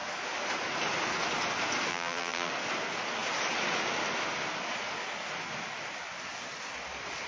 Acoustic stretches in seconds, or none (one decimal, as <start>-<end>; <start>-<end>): 0.0-1.9; 2.5-7.3